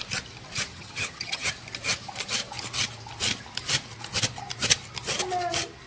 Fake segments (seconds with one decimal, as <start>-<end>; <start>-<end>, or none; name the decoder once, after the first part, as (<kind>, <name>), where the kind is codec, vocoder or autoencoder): 0.7-1.5 (vocoder, HiFi-GAN)

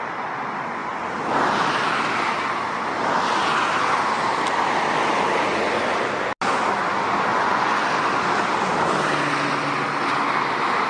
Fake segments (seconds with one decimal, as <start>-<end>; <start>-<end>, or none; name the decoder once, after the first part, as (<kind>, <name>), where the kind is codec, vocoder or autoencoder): 7.3-7.8 (vocoder, Vocos)

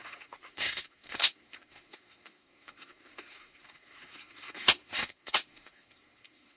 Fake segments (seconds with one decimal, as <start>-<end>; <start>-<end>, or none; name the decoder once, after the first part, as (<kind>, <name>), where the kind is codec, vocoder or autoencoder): 0.0-6.6 (codec, SNAC)

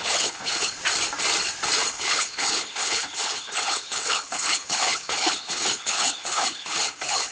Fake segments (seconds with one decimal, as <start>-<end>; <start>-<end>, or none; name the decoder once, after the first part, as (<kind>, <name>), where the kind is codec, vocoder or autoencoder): 0.0-0.8 (codec, HILCodec); 1.9-7.3

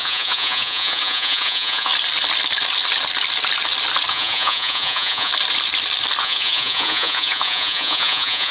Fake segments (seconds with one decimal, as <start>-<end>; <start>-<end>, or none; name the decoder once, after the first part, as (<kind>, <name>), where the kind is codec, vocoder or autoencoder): 0.0-1.9 (vocoder, Vocos); 4.1-5.3; 6.2-8.5